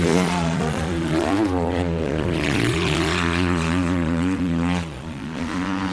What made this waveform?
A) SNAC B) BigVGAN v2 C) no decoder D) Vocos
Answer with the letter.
D